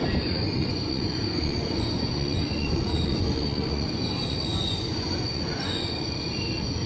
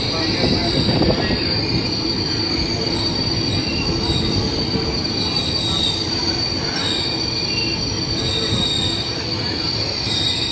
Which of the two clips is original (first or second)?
second